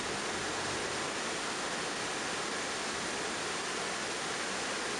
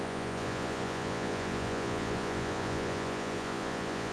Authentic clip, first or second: first